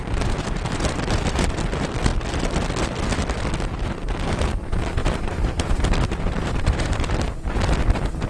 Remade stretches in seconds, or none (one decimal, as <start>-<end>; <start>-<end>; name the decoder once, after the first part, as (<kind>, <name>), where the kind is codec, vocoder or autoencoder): 0.0-1.6 (vocoder, BigVGAN v2); 5.0-7.6